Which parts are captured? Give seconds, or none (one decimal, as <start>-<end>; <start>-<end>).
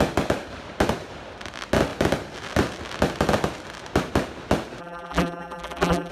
0.0-4.8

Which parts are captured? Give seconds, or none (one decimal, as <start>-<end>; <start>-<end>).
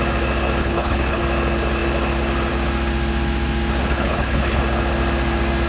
0.0-0.6; 1.2-3.8; 4.6-5.7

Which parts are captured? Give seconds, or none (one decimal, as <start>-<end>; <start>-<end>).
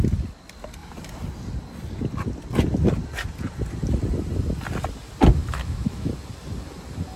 0.0-5.4; 6.1-7.2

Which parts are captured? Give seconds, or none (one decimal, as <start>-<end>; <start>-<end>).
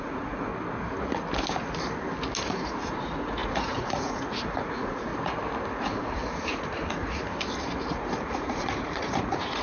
0.5-2.4; 5.1-5.7; 7.2-7.9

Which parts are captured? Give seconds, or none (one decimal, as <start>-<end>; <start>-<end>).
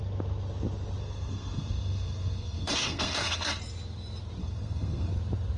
0.0-1.0; 3.6-4.4; 5.1-5.6